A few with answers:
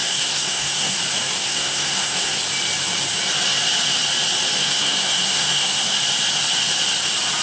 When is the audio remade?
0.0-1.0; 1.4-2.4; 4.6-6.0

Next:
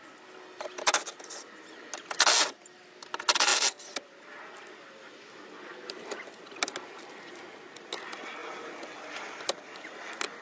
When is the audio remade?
none